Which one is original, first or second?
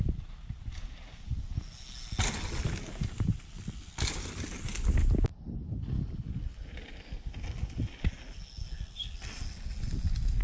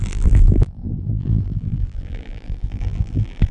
first